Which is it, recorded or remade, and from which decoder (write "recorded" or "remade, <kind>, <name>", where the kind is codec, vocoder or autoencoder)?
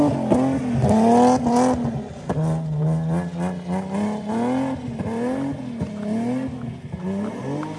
recorded